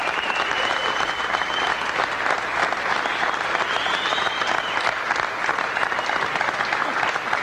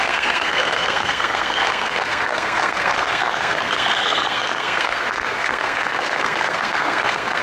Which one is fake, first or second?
second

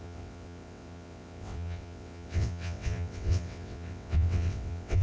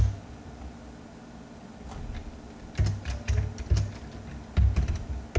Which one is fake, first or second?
first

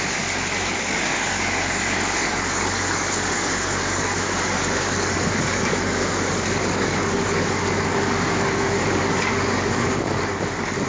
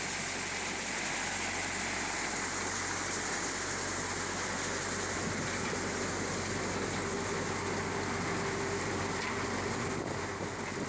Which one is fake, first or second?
first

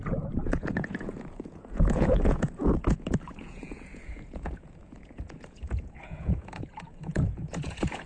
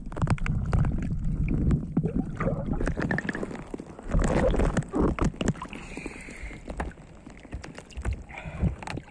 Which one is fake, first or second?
first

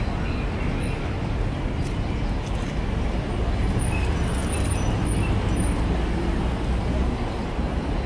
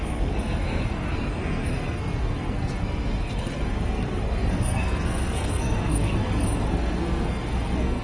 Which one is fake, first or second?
second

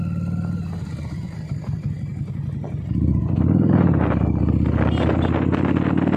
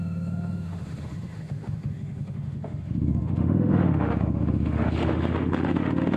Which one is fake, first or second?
second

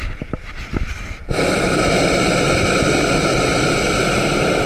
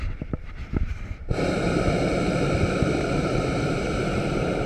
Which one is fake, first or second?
second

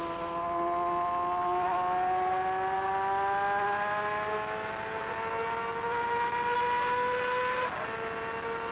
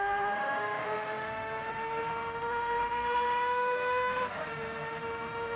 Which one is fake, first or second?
second